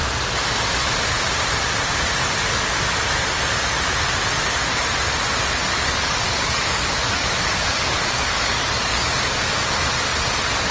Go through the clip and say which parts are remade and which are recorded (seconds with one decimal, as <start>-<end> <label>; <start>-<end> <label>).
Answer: 0.0-5.7 recorded; 5.7-9.5 remade; 9.5-10.7 recorded